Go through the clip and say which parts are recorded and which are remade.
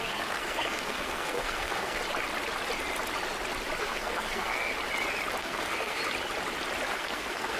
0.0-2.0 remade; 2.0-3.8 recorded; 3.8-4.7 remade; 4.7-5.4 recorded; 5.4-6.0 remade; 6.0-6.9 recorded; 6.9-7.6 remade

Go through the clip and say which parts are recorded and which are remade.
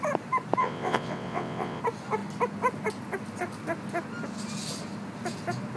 0.0-0.6 recorded; 0.6-1.8 remade; 1.8-5.8 recorded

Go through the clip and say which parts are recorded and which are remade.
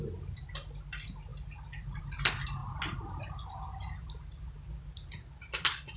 0.0-6.0 recorded